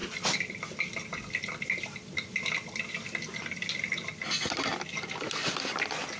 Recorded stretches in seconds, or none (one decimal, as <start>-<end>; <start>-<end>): 0.0-6.2